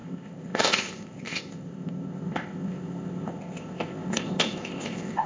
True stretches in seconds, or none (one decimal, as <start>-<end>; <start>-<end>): none